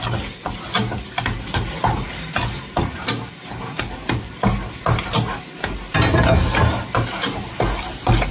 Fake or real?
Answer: real